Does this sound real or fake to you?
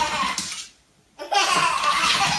real